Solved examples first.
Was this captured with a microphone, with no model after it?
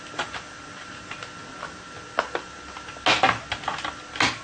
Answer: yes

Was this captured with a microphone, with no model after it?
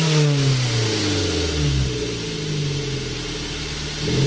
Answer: yes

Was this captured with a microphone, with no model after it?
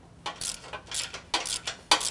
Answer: yes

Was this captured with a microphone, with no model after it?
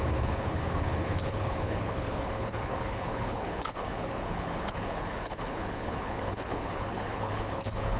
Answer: no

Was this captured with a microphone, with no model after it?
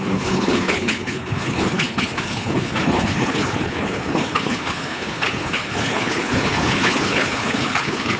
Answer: no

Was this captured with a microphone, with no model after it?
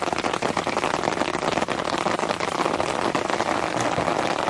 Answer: yes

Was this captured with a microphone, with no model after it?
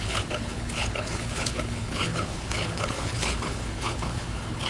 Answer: no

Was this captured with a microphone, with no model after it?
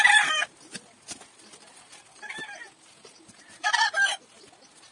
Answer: yes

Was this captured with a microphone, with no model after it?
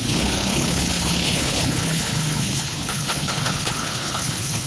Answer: no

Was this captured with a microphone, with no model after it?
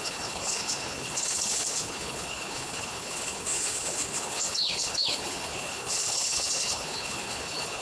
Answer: no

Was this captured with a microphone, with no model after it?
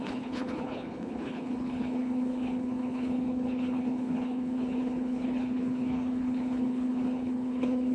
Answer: no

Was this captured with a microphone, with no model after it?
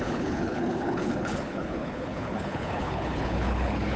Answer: no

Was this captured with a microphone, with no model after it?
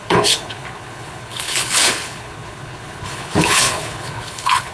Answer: no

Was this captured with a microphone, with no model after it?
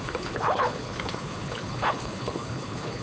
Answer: no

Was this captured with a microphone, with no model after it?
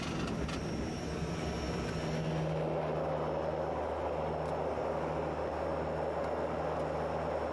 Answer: yes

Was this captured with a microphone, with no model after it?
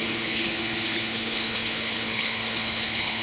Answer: no